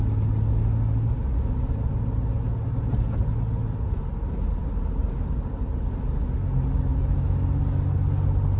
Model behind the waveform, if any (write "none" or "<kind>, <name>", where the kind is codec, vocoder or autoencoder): none